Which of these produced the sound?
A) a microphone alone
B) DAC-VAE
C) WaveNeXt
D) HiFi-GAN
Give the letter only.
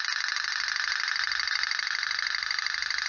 A